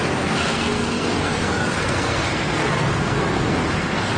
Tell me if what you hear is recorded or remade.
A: remade